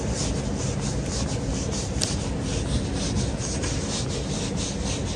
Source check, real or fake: real